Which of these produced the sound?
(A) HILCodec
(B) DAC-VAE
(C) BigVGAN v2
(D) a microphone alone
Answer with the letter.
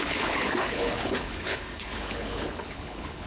A